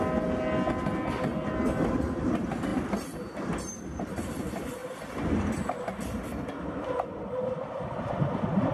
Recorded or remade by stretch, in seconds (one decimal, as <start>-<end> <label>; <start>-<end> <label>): 0.0-8.7 recorded